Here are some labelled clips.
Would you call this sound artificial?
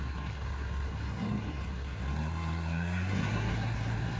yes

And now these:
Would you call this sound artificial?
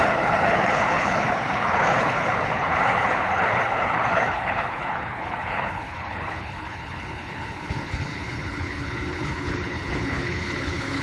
yes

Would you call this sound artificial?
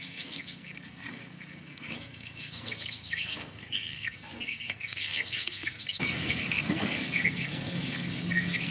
yes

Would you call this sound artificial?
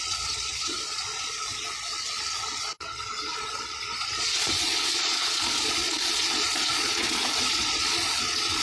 yes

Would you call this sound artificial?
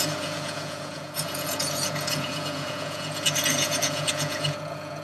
yes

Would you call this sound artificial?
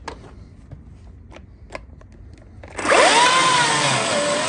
no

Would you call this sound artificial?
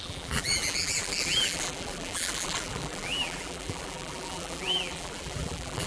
yes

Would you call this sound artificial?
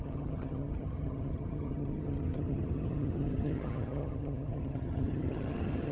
yes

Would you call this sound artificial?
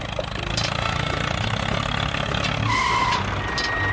no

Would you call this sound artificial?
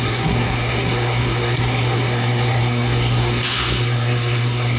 yes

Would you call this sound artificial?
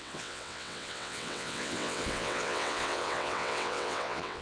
yes